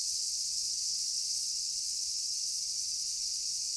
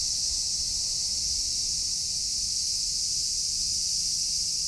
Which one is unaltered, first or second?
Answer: second